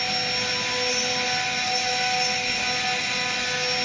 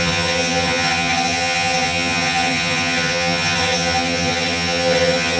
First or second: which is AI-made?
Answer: second